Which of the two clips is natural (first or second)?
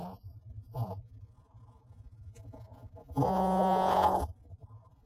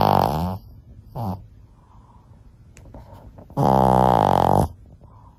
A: second